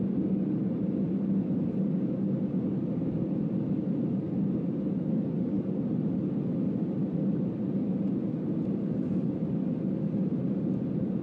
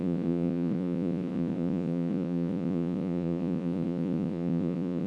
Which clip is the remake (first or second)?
second